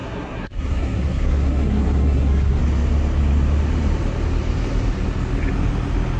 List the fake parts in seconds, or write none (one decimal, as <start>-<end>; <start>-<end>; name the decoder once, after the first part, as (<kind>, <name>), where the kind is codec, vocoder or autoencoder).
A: 0.0-2.6 (codec, SNAC)